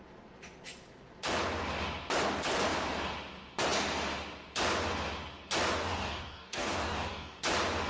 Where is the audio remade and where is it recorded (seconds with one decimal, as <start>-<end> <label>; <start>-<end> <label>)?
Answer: 0.0-5.8 recorded; 5.8-7.4 remade; 7.4-7.9 recorded